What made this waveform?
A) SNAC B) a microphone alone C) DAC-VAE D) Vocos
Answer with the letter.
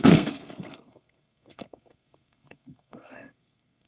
A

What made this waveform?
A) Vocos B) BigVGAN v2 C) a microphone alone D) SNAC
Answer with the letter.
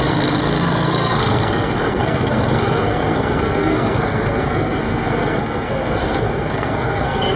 D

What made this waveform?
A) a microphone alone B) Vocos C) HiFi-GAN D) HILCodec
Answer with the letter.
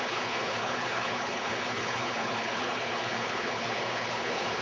D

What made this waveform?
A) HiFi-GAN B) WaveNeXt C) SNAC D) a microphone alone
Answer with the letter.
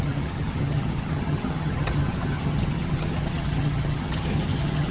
A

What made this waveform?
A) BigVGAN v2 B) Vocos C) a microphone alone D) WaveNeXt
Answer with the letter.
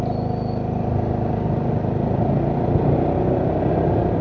C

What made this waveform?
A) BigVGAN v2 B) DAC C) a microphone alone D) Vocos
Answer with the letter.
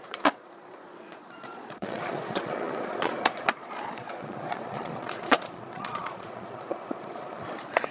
D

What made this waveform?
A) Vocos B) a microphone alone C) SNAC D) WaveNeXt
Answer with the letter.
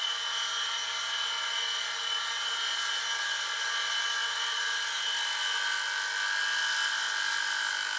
B